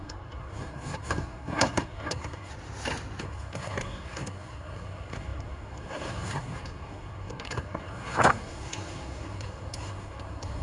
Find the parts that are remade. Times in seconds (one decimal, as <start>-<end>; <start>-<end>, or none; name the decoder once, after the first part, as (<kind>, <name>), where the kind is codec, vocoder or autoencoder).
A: 0.0-2.5 (codec, SNAC); 3.2-10.6